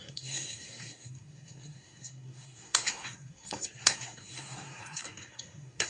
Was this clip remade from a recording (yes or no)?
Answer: yes